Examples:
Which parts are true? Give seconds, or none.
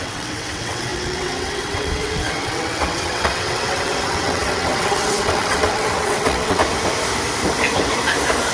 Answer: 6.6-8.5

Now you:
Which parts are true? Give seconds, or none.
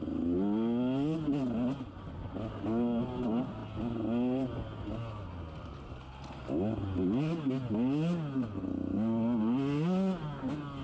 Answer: 0.0-10.8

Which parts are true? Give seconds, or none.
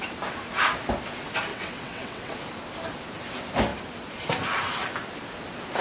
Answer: 0.0-1.5; 2.4-5.8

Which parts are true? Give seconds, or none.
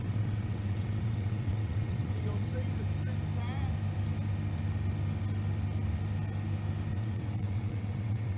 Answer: 2.5-6.9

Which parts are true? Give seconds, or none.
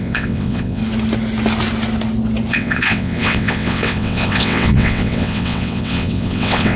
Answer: 0.8-2.5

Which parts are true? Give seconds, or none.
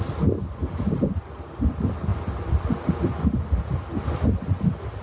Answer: 0.0-5.0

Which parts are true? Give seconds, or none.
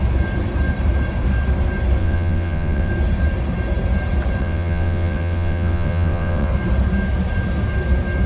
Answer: 0.0-2.0; 2.9-4.4; 6.5-8.3